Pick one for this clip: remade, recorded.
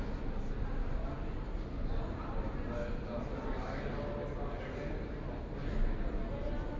recorded